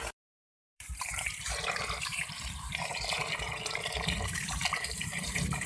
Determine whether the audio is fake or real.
fake